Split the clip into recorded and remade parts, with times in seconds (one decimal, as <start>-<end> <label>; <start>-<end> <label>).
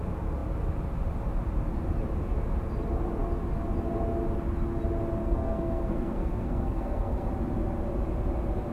0.0-5.2 recorded; 5.2-7.3 remade; 7.3-8.7 recorded